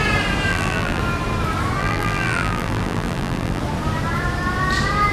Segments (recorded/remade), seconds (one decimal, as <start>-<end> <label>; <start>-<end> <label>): 0.0-0.5 recorded; 0.5-1.0 remade; 1.0-1.8 recorded; 1.8-3.6 remade; 3.6-5.1 recorded